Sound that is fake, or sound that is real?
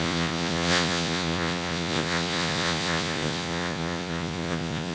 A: fake